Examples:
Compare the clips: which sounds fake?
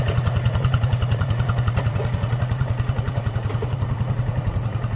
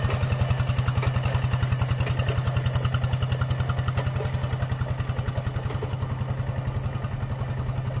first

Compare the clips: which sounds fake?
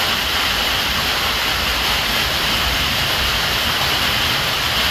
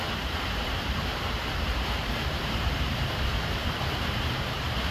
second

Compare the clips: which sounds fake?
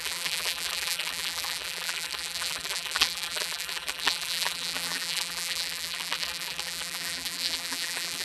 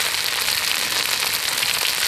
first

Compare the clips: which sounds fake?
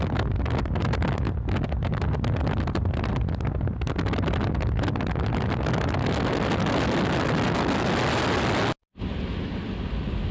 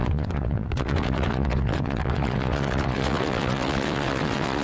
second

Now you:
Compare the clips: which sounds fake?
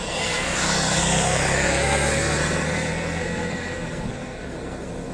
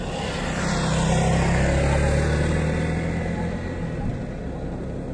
first